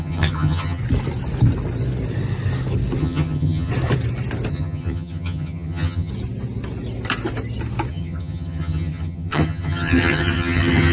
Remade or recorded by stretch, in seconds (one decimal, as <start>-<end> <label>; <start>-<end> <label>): 0.0-0.8 remade; 0.8-3.0 recorded; 3.0-3.7 remade; 3.7-4.5 recorded; 4.5-6.1 remade; 6.1-7.9 recorded; 7.9-10.9 remade